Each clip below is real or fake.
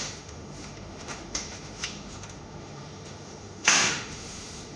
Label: fake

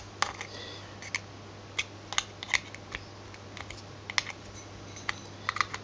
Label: real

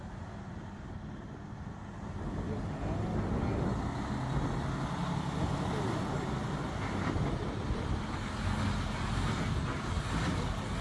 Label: real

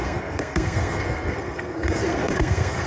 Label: fake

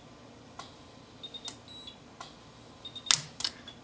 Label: real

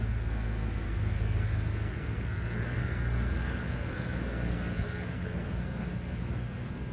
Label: fake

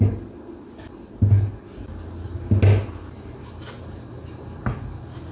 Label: real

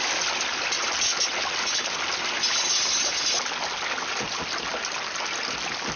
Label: real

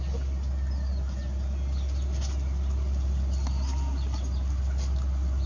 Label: real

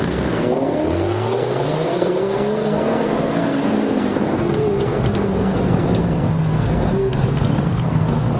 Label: fake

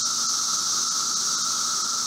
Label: real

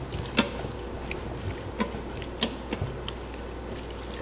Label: real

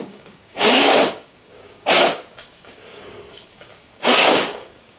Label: fake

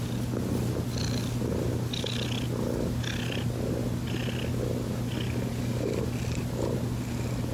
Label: real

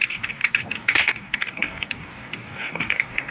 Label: fake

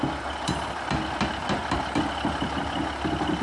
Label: real